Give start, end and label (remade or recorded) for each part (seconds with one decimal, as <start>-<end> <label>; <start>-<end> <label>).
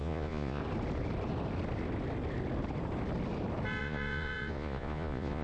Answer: 0.0-0.6 remade; 0.6-3.8 recorded; 3.8-5.4 remade